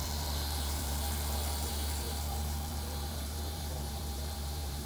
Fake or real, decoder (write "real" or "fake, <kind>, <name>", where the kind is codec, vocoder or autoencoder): fake, vocoder, BigVGAN v2